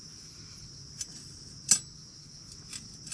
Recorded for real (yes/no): yes